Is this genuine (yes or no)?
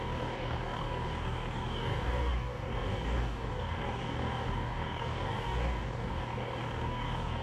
no